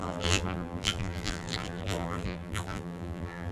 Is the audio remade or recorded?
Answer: remade